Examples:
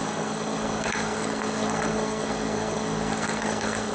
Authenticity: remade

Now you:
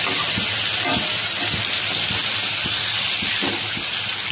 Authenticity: recorded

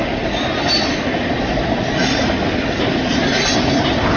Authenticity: recorded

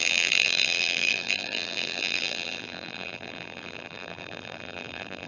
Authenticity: remade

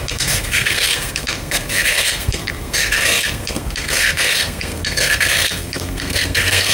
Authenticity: remade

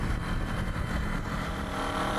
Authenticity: remade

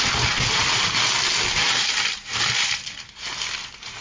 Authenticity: recorded